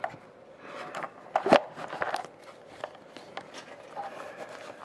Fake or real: real